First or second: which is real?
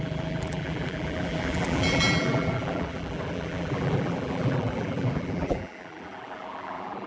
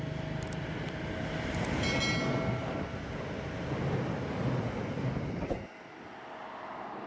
second